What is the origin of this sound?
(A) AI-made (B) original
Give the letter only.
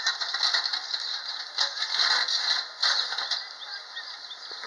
B